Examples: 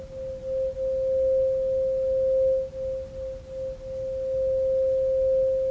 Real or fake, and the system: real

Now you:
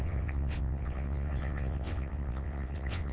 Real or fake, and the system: fake, vocoder, WaveNeXt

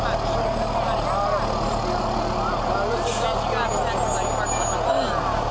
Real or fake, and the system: real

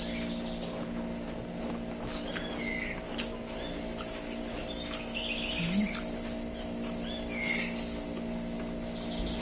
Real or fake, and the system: real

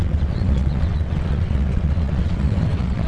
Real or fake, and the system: fake, vocoder, WaveNeXt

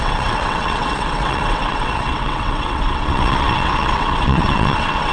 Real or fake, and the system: fake, vocoder, WaveNeXt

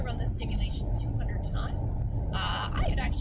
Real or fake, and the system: real